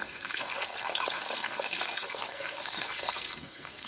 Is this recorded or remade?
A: remade